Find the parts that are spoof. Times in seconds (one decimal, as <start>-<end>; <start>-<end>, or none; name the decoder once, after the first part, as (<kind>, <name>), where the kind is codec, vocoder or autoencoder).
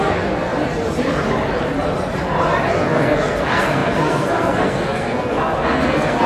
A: 0.0-0.5 (codec, SNAC); 2.7-6.3